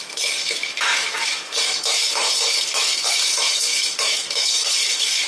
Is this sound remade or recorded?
remade